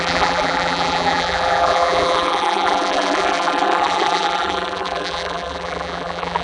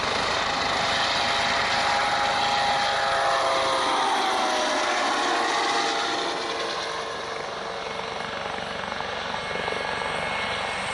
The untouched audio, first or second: second